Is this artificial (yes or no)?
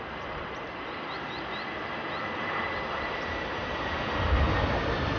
no